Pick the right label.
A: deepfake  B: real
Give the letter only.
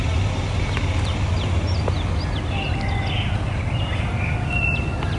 B